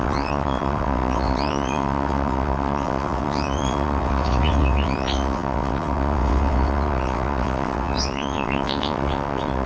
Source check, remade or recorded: remade